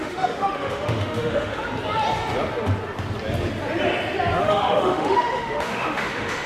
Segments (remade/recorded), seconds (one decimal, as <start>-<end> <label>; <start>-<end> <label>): 0.0-1.7 remade; 1.7-4.4 recorded; 4.4-6.5 remade